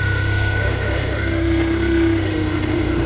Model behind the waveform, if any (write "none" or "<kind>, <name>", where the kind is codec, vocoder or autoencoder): autoencoder, DAC-VAE